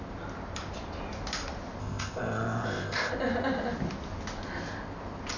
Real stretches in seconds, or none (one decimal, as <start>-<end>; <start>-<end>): 0.0-1.8; 3.1-5.4